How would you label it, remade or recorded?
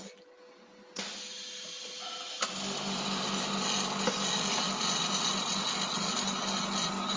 recorded